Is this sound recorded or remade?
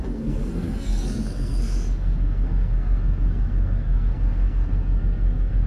remade